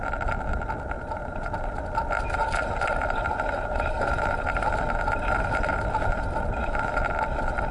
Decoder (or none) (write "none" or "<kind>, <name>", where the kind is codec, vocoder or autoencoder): none